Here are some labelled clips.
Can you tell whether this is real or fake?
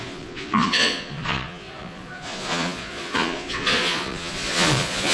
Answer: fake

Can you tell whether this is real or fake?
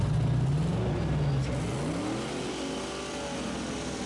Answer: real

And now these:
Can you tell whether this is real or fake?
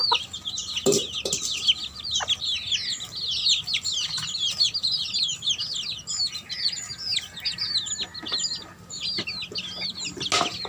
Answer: real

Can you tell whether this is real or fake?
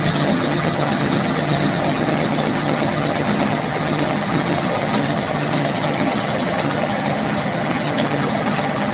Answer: fake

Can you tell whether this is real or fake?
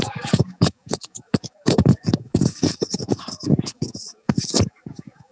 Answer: fake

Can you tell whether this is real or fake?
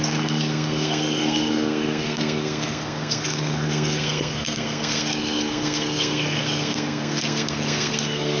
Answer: fake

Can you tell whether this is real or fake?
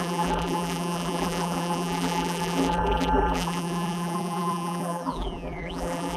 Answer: fake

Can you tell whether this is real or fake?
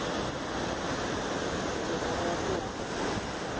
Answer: real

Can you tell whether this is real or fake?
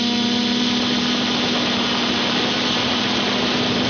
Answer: real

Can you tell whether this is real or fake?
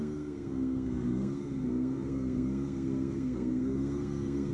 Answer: fake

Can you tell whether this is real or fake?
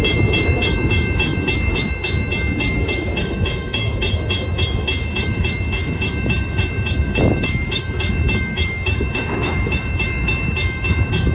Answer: fake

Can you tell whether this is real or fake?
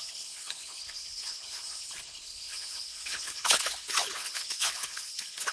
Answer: fake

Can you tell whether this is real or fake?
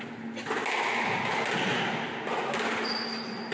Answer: real